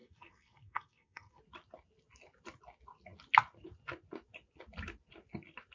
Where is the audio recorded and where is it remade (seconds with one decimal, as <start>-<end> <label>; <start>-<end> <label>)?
0.0-1.4 remade; 1.4-5.7 recorded